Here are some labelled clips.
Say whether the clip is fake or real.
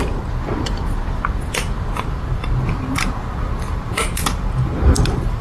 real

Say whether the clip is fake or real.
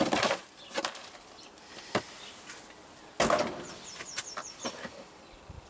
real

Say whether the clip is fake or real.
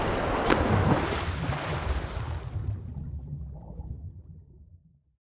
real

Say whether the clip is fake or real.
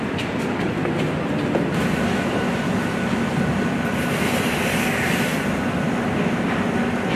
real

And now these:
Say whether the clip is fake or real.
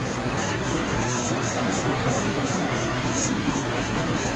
fake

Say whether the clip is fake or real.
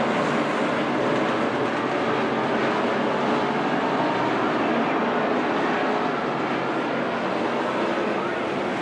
real